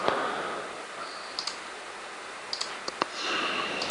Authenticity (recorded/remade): recorded